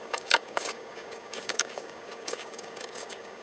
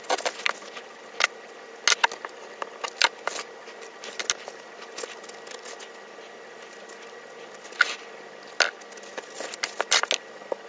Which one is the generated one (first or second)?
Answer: first